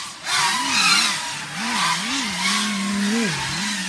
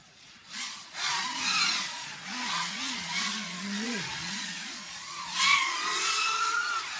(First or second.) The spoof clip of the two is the second